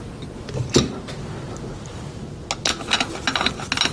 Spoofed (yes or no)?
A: no